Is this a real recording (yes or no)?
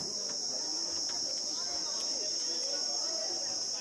yes